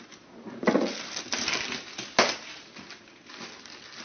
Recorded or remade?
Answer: recorded